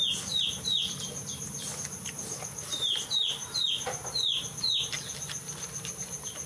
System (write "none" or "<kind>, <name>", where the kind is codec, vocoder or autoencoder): none